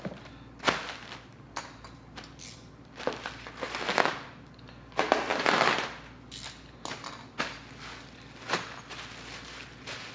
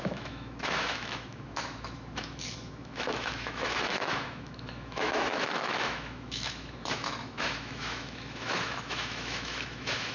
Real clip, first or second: first